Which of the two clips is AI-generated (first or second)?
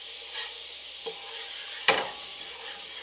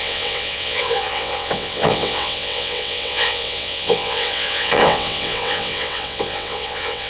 second